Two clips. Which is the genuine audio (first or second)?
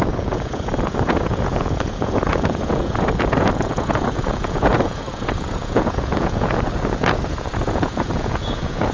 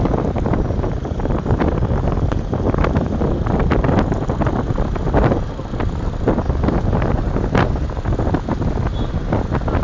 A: second